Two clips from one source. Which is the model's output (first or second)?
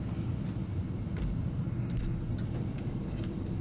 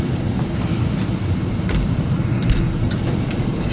second